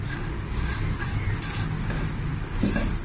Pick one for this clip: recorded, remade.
recorded